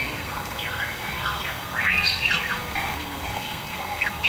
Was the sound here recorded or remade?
remade